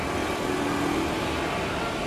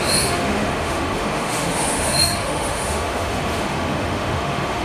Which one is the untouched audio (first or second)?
first